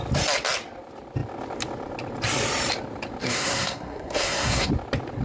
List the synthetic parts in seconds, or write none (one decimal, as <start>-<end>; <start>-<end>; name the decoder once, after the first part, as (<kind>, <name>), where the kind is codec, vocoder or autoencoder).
3.2-4.7 (codec, SNAC)